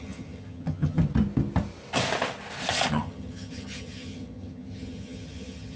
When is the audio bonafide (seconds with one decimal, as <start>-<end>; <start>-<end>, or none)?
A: 1.0-2.9

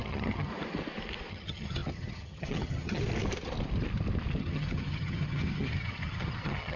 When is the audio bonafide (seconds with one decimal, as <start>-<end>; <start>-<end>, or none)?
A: 0.5-1.3; 3.0-4.4

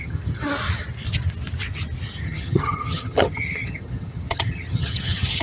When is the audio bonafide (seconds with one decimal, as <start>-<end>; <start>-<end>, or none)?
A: 0.4-2.2

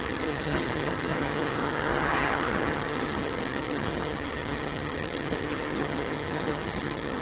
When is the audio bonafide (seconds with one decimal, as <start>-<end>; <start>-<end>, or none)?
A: none